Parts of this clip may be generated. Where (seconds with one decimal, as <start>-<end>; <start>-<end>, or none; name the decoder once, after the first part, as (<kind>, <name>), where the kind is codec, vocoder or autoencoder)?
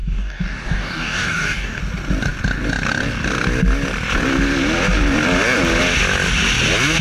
0.0-1.8 (codec, DAC)